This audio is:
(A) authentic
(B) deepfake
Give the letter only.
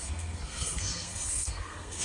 B